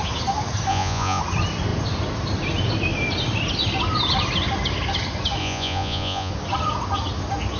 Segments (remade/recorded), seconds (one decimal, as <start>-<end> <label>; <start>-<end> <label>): 0.0-0.7 recorded; 0.7-1.2 remade; 1.2-5.4 recorded; 5.4-6.3 remade; 6.3-7.6 recorded